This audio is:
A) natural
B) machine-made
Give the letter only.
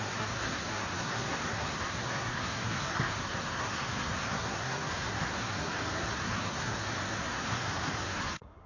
B